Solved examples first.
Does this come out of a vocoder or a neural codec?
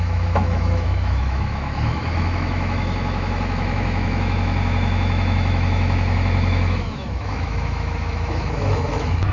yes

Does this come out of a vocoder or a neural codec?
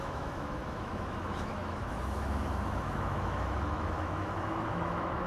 yes